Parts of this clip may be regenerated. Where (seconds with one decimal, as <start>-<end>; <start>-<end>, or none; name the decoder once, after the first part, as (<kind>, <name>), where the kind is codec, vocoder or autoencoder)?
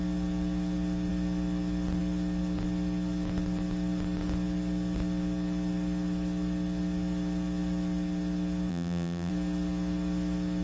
8.7-9.3 (vocoder, BigVGAN v2)